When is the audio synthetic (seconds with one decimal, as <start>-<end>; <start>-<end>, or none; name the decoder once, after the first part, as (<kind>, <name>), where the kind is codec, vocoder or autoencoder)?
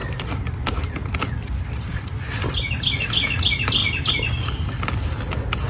none